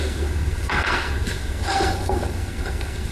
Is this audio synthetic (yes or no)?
yes